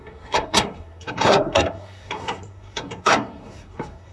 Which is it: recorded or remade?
remade